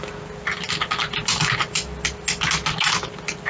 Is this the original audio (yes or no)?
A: yes